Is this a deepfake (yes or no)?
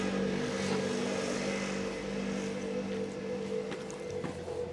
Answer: no